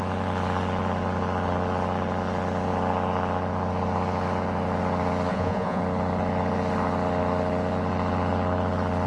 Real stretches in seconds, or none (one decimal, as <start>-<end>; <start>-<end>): 0.0-5.3; 5.8-9.1